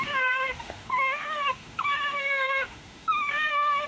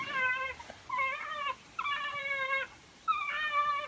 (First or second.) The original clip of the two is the second